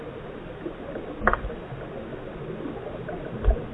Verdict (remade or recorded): recorded